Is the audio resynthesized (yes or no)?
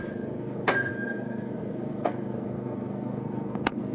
yes